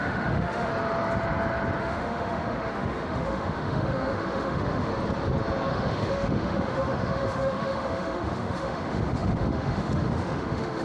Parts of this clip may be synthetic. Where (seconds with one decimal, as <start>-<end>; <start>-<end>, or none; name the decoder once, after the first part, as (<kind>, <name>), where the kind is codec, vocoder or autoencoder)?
0.0-0.7 (autoencoder, DAC-VAE); 1.8-4.9; 5.7-10.8